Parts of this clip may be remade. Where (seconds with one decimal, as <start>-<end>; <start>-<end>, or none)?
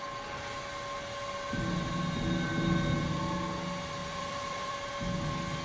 4.0-4.9